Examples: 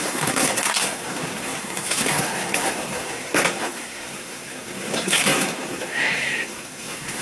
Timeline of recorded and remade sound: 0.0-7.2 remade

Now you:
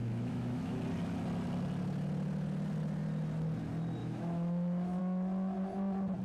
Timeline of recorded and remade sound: 0.0-0.8 remade; 0.8-4.0 recorded; 4.0-5.0 remade; 5.0-6.2 recorded

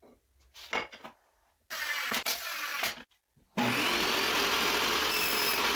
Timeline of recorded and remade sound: 0.0-2.7 recorded; 2.7-3.2 remade; 3.2-5.8 recorded